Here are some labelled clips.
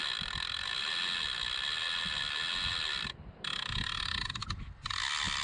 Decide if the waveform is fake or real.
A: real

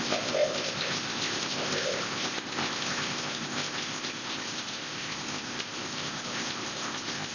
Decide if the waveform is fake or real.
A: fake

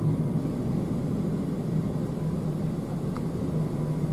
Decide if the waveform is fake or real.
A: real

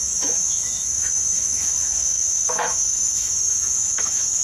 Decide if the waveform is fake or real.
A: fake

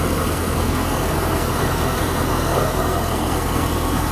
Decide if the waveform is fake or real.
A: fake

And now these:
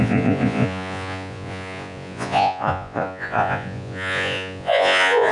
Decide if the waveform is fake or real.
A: fake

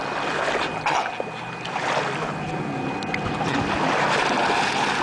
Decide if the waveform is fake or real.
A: real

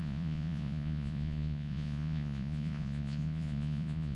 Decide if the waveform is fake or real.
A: fake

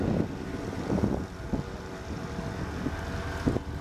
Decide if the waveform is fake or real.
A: real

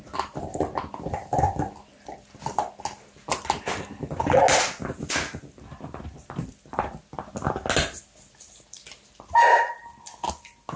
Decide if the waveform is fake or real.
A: real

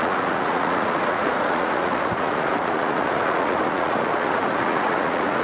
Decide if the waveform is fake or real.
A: fake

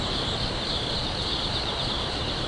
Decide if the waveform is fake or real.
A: fake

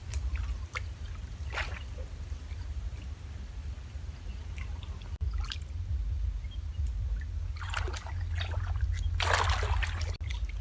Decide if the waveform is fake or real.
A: real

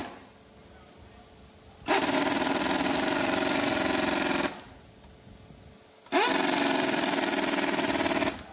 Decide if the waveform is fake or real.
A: real